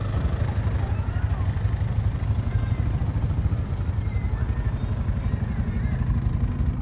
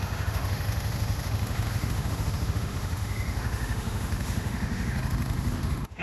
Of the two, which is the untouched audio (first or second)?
first